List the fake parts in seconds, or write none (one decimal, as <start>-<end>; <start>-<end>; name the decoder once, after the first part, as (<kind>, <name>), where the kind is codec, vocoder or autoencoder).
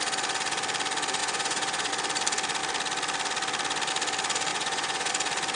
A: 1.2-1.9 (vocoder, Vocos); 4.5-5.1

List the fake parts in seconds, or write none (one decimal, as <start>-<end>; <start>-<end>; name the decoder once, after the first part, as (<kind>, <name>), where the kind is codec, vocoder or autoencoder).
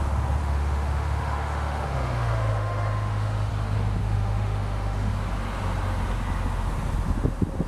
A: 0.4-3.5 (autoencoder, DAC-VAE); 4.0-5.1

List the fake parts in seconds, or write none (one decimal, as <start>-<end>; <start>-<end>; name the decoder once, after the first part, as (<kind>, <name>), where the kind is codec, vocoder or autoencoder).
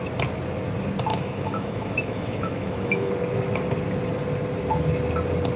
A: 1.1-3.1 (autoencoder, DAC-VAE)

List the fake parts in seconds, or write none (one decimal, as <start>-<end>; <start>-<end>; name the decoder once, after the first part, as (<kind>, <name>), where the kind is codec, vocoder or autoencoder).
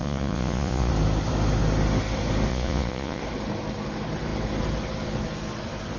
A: 0.0-0.9 (vocoder, Vocos); 2.5-3.2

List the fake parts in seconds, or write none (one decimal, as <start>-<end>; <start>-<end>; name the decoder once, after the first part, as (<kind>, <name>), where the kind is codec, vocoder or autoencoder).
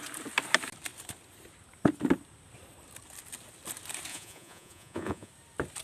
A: 4.1-5.3 (vocoder, Vocos)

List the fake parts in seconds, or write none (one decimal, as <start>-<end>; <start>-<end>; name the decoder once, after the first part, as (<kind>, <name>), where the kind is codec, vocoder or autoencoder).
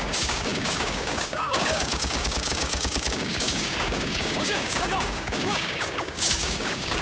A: 0.0-7.0 (codec, DAC)